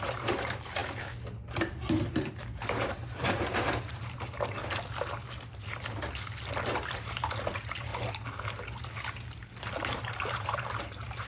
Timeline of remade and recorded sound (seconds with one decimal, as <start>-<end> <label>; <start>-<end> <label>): 0.0-4.6 remade; 4.6-6.5 recorded; 6.5-7.9 remade; 7.9-9.9 recorded; 9.9-11.3 remade